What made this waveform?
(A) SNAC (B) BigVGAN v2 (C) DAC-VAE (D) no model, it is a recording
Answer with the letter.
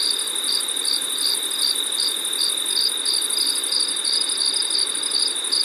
D